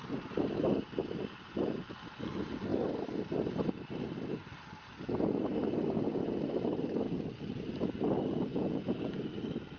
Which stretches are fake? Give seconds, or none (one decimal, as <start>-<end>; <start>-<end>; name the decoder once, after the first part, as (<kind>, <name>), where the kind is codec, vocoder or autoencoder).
8.5-9.2 (vocoder, Vocos)